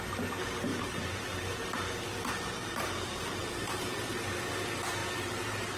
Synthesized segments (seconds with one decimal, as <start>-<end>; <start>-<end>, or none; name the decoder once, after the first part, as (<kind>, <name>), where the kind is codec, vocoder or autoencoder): 0.7-4.2 (vocoder, BigVGAN v2); 5.0-5.8